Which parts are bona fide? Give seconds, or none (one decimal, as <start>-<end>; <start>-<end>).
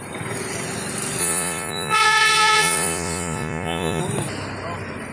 0.0-1.2; 4.0-5.1